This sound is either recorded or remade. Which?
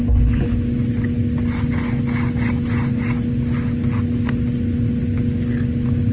recorded